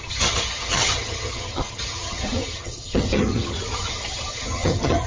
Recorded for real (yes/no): no